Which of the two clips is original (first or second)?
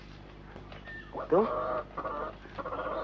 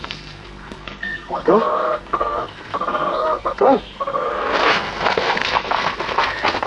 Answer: first